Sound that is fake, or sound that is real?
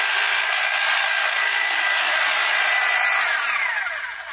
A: real